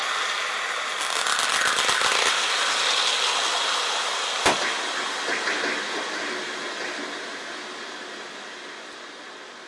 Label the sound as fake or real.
real